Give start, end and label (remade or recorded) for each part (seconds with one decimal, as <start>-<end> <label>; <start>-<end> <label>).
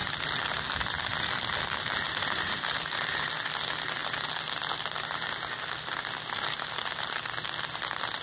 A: 0.0-8.2 recorded